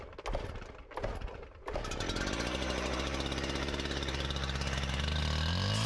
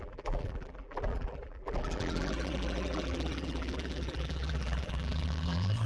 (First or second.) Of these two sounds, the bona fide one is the first